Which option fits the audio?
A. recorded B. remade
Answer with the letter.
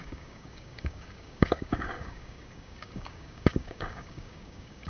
B